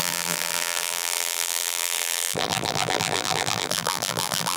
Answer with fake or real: fake